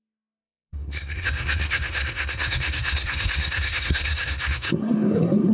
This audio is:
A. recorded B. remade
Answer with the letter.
B